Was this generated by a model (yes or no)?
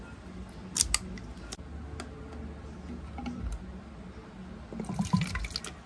no